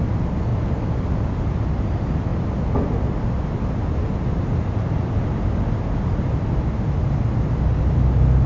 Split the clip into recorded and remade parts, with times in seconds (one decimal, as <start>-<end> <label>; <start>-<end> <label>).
0.0-0.5 recorded; 0.5-1.0 remade; 1.0-8.5 recorded